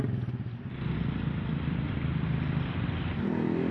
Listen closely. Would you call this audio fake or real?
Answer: fake